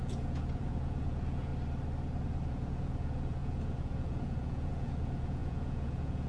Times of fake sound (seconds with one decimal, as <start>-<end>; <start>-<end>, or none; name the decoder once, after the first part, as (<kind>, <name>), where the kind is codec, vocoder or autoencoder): 0.0-1.5 (vocoder, Vocos); 2.5-6.3

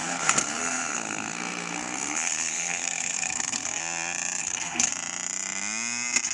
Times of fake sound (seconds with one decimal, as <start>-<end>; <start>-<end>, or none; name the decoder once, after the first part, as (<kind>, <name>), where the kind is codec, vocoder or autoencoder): 0.0-3.8 (codec, SNAC); 4.4-4.9

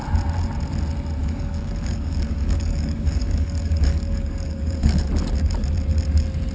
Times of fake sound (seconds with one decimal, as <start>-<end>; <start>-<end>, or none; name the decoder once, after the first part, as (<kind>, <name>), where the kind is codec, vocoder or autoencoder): 1.2-5.1 (codec, DAC)

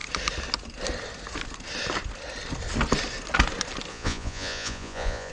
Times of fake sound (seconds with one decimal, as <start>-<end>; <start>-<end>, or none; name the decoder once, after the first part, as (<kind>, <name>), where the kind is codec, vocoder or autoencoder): 3.9-5.3 (vocoder, Vocos)

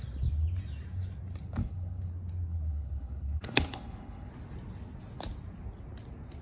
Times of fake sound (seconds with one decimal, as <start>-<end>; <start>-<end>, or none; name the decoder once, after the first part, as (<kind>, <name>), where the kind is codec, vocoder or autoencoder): 1.6-2.1 (codec, HILCodec); 2.5-4.3

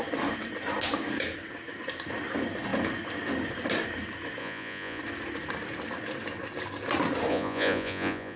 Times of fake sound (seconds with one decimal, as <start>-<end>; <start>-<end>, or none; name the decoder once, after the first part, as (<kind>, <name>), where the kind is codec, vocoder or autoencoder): 4.4-5.0 (vocoder, Vocos); 7.3-8.4

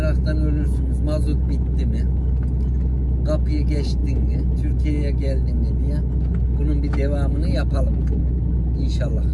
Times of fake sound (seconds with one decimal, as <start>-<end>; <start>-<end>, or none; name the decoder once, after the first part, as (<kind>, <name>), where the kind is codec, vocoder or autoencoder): none

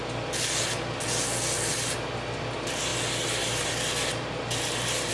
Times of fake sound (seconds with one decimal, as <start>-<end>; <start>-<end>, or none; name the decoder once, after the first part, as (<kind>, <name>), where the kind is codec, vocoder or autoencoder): none